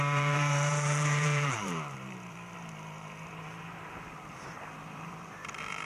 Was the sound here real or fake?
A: fake